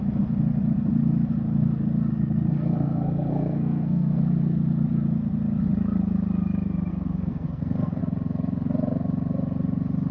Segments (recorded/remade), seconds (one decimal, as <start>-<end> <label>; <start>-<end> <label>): 0.0-2.1 recorded; 2.1-4.2 remade; 4.2-6.9 recorded; 6.9-8.0 remade; 8.0-10.1 recorded